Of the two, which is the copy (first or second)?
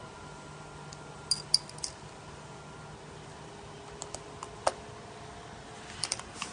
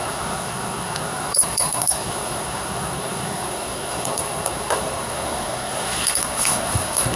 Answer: second